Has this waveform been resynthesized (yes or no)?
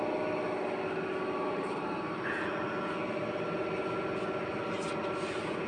no